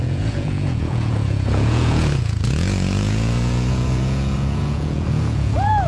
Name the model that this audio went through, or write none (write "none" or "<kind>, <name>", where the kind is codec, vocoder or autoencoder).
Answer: vocoder, Vocos